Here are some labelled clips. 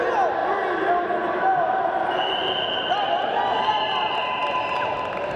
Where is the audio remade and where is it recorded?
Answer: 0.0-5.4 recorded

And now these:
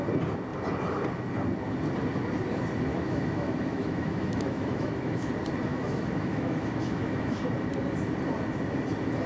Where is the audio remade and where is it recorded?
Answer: 0.0-2.9 recorded; 2.9-5.3 remade; 5.3-5.7 recorded; 5.7-7.4 remade; 7.4-9.3 recorded

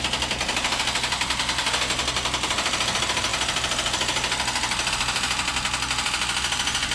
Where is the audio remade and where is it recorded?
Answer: 0.0-6.9 recorded

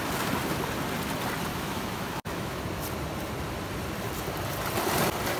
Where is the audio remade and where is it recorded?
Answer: 0.0-1.5 recorded; 1.5-2.6 remade; 2.6-5.4 recorded

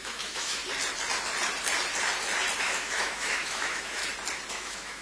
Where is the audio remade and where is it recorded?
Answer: 0.0-0.6 remade; 0.6-2.6 recorded; 2.6-4.0 remade; 4.0-4.5 recorded; 4.5-5.0 remade

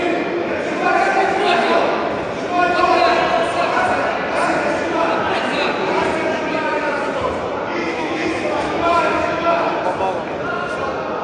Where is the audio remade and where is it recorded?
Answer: 0.0-1.2 recorded; 1.2-2.1 remade; 2.1-7.9 recorded; 7.9-9.7 remade; 9.7-11.2 recorded

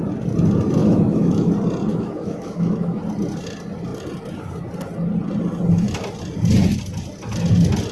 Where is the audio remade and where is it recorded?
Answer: 0.0-0.8 recorded; 0.8-1.5 remade; 1.5-1.9 recorded; 1.9-3.0 remade; 3.0-7.9 recorded